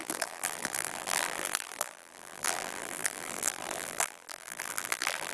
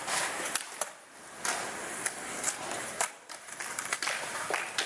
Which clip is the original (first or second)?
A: second